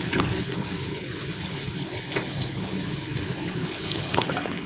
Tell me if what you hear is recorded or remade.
remade